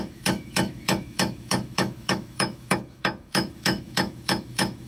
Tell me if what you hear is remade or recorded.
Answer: remade